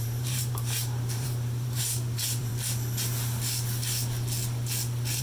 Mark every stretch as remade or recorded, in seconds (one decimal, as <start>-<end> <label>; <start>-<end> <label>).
0.0-2.5 remade; 2.5-5.2 recorded